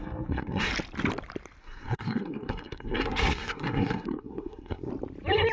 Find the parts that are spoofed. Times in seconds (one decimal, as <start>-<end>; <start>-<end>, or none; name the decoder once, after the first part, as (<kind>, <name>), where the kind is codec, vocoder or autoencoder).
0.0-0.7 (codec, SNAC); 1.6-4.9